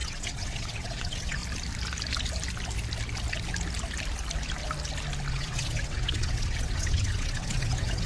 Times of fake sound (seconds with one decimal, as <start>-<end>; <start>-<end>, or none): 0.0-1.4; 5.3-8.1